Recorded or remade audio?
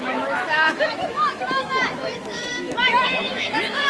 remade